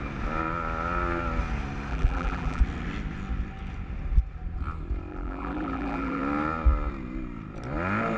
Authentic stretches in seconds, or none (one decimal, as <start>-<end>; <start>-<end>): 0.0-1.9; 2.6-5.1; 6.2-8.2